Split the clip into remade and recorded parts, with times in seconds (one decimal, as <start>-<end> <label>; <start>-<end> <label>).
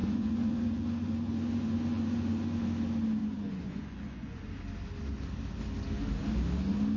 0.0-2.6 remade; 2.6-3.2 recorded; 3.2-4.5 remade; 4.5-7.0 recorded